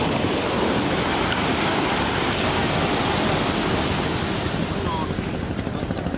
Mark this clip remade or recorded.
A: recorded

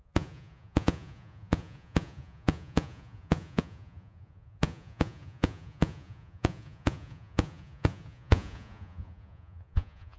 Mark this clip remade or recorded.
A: remade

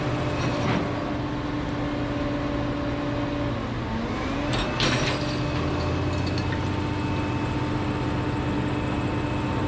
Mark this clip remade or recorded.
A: recorded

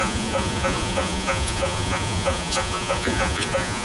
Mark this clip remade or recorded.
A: remade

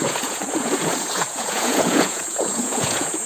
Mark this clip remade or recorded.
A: remade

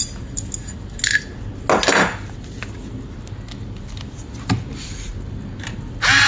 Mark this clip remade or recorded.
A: recorded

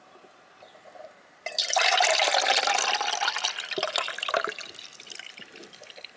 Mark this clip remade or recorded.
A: recorded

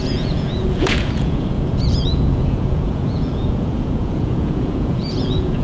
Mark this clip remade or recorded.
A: remade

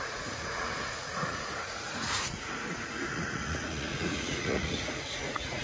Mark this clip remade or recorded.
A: remade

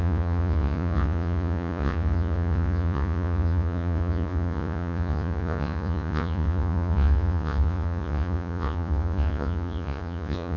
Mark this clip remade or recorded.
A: remade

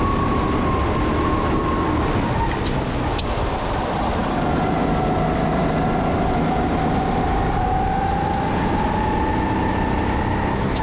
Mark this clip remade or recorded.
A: recorded